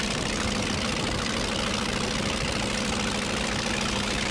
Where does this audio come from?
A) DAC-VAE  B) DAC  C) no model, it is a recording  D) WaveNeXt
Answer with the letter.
C